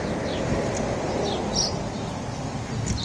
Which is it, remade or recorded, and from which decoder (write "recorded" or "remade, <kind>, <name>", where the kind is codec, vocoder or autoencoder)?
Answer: recorded